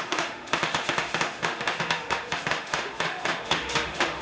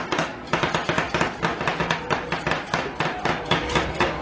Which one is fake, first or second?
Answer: first